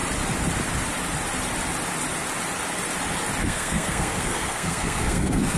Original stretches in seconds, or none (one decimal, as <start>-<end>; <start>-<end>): 0.0-3.4